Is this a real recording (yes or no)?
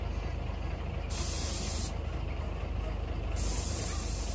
yes